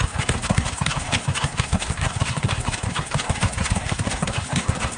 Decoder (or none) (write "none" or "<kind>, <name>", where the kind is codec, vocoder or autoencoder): codec, SNAC